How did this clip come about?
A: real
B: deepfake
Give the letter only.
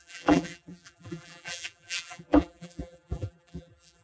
B